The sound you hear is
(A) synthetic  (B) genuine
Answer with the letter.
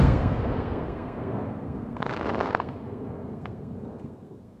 A